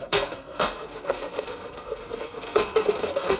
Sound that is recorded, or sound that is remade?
remade